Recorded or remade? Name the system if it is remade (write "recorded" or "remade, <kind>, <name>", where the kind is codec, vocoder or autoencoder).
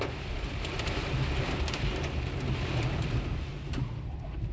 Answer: recorded